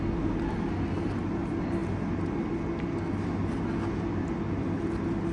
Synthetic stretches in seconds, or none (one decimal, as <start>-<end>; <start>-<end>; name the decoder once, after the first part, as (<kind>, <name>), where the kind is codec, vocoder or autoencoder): none